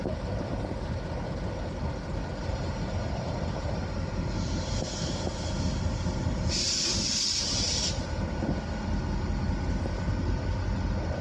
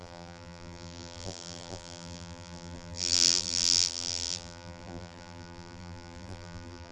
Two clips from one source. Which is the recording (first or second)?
first